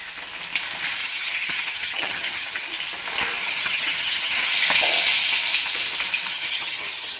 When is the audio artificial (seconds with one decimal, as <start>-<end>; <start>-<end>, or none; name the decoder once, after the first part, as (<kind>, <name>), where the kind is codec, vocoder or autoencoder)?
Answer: 1.0-2.7 (vocoder, HiFi-GAN); 3.4-4.5; 6.3-7.2